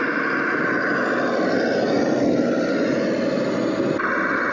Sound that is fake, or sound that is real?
real